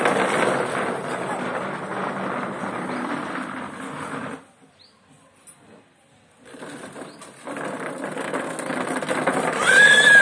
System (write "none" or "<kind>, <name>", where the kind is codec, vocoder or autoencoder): none